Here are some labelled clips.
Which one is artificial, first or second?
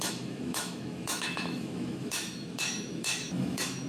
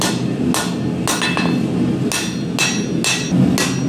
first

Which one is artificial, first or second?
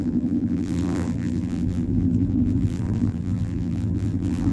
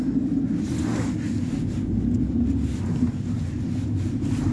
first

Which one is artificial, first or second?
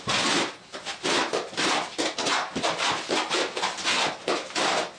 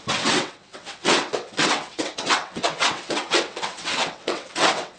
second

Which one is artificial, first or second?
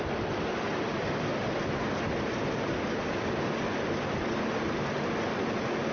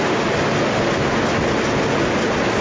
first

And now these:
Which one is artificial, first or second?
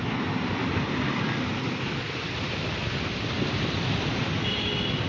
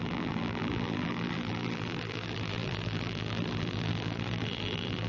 second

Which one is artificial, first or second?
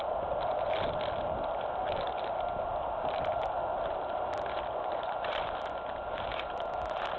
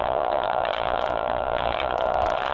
second